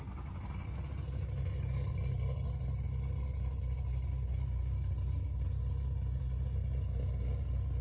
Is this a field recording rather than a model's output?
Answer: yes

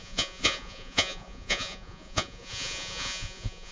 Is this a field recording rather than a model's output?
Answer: no